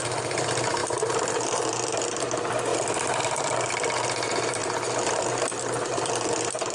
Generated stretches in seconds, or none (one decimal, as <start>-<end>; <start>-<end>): 0.0-4.6; 5.6-6.7